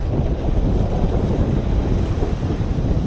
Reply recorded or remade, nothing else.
remade